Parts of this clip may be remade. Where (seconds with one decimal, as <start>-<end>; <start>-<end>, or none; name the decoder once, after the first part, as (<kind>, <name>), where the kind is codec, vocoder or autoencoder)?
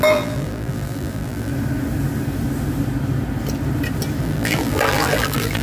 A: 0.0-1.5 (vocoder, BigVGAN v2); 4.2-5.6